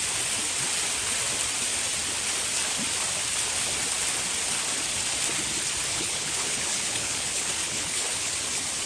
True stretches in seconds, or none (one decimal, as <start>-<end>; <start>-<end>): 0.0-5.9; 8.3-8.9